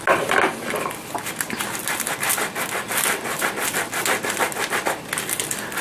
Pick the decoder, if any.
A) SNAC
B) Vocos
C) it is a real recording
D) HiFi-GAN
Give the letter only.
C